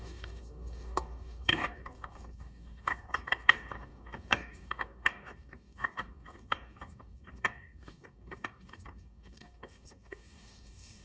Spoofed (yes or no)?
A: yes